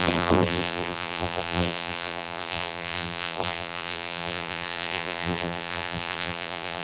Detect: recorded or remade remade